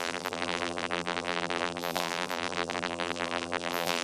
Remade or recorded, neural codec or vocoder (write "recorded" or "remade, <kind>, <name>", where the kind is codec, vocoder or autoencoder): remade, vocoder, BigVGAN v2